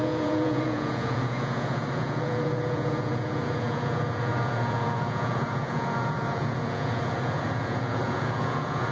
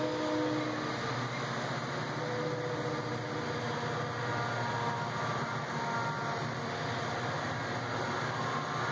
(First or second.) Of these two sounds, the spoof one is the first